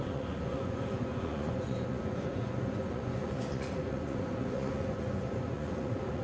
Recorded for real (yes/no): no